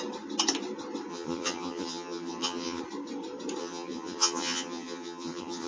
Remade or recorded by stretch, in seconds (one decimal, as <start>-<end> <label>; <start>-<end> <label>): 0.0-1.1 recorded; 1.1-2.8 remade; 2.8-3.6 recorded; 3.6-5.7 remade